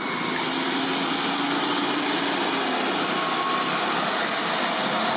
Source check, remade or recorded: recorded